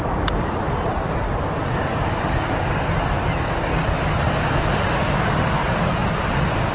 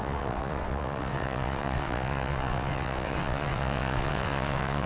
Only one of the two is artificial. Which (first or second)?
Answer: second